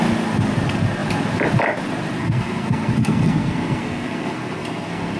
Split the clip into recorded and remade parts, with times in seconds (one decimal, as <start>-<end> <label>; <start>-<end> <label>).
0.0-2.2 recorded; 2.2-5.2 remade